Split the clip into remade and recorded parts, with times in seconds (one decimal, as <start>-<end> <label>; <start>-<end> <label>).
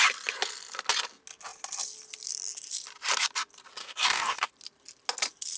0.0-3.8 recorded; 3.8-4.5 remade; 4.5-5.6 recorded